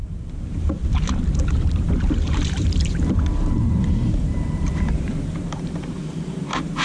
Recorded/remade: remade